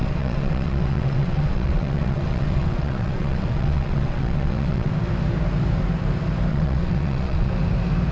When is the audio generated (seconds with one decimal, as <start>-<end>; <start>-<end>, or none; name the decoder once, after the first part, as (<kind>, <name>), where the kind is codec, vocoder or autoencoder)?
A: 0.0-4.9 (vocoder, WaveNeXt); 6.5-7.5